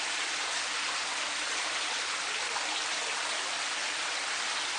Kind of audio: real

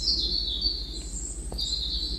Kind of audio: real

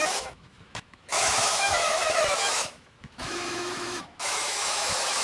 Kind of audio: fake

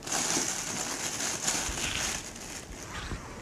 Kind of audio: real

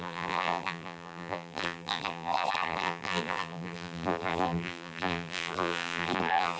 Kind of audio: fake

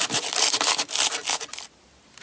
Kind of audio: fake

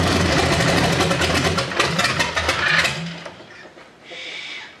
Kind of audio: real